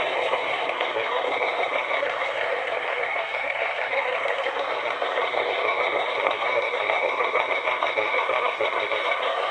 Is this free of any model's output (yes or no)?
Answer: no